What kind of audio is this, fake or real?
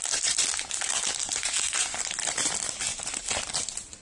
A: real